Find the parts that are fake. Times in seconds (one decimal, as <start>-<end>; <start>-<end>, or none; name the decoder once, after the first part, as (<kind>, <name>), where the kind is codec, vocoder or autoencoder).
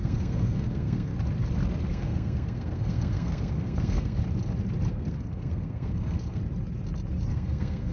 0.0-1.1 (codec, SNAC); 1.9-4.2; 4.9-6.4; 7.3-7.9